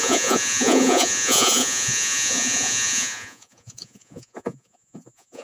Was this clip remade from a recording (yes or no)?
yes